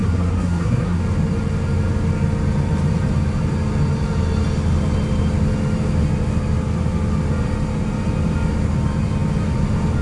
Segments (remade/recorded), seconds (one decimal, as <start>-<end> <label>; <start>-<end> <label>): 0.0-1.0 remade; 1.0-10.0 recorded